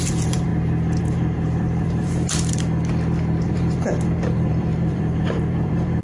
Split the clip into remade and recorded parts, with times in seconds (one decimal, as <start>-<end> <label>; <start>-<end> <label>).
0.0-0.5 remade; 0.5-1.0 recorded; 1.0-2.8 remade; 2.8-3.4 recorded; 3.4-6.0 remade